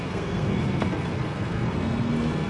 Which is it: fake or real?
fake